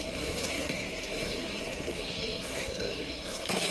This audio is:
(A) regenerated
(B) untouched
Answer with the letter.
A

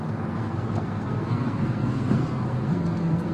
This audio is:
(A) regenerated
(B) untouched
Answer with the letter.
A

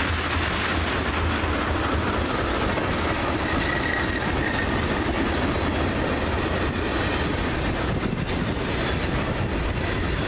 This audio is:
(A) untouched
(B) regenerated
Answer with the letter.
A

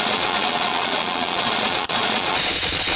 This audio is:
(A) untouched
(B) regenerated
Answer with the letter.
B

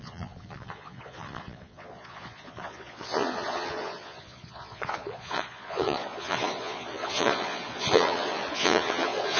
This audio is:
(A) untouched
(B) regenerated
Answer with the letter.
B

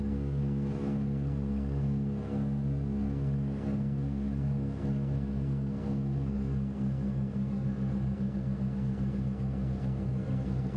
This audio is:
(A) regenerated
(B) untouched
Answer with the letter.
A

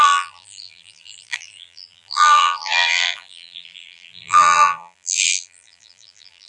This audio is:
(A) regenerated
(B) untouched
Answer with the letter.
A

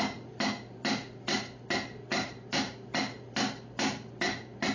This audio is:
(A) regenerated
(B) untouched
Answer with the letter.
B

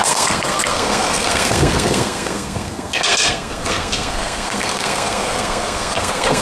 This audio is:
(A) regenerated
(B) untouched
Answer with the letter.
A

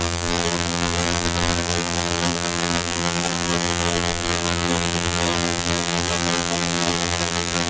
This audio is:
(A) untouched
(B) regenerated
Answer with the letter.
B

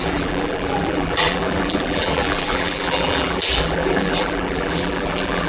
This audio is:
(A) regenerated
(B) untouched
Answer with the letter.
A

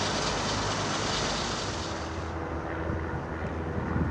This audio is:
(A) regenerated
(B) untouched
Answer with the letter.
B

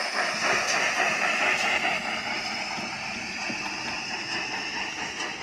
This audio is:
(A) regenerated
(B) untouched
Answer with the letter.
B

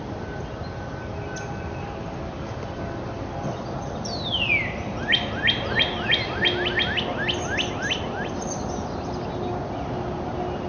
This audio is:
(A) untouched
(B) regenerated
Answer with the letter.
A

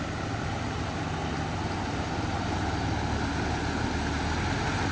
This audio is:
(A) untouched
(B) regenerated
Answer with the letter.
A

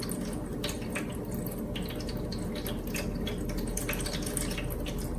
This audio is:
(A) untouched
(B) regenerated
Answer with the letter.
A